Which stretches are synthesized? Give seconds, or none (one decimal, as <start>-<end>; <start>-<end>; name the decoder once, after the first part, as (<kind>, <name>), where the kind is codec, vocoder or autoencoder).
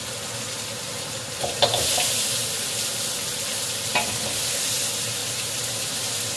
5.2-5.9 (vocoder, BigVGAN v2)